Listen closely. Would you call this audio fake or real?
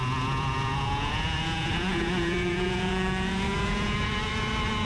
fake